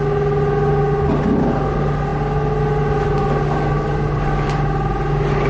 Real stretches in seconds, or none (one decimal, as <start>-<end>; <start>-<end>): 0.0-5.5